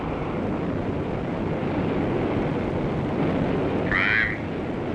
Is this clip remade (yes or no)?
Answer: no